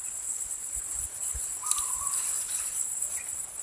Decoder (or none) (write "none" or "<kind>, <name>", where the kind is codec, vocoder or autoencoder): none